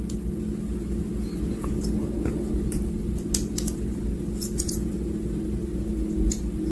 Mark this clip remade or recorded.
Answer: recorded